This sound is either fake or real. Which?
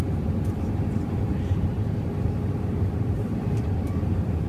fake